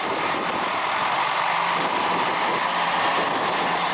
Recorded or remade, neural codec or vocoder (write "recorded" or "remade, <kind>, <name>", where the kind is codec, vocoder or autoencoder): recorded